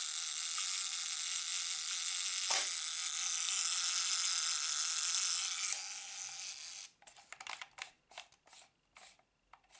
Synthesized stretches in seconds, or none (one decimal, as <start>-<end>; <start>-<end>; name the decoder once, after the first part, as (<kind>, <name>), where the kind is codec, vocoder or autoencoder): none